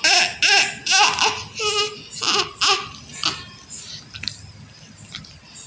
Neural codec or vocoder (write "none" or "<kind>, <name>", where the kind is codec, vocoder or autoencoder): none